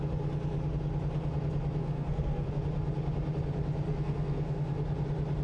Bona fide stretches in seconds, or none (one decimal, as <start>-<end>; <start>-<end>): 0.0-1.8; 2.5-3.9; 4.7-5.4